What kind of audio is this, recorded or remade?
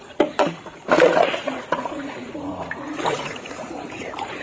remade